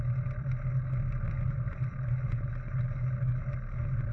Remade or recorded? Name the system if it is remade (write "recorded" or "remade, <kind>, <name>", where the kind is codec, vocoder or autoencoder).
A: recorded